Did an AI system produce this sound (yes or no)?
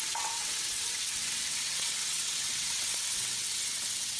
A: yes